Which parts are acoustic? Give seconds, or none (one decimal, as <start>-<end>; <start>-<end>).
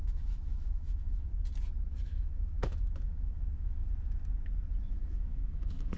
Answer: 1.3-2.0; 3.8-4.8